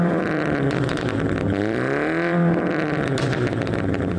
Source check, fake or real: fake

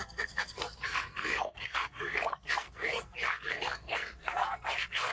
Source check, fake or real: fake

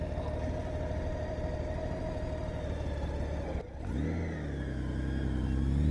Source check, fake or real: real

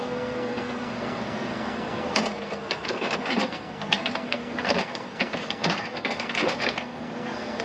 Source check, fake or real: fake